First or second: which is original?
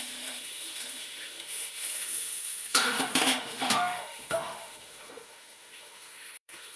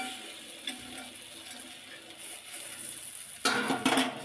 second